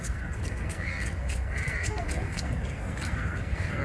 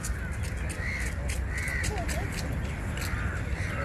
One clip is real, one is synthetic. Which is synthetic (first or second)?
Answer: first